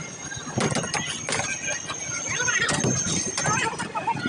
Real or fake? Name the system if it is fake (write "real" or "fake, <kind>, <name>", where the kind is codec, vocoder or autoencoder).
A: real